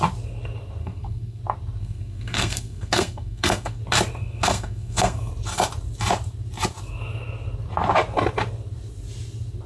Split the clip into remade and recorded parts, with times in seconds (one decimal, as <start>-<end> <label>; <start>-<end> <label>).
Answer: 0.0-0.8 recorded; 0.8-1.4 remade; 1.4-1.8 recorded; 1.8-3.8 remade; 3.8-4.2 recorded; 4.2-5.3 remade; 5.3-9.7 recorded